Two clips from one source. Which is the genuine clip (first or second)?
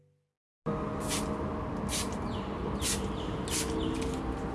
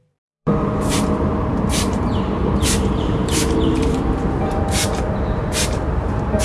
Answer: first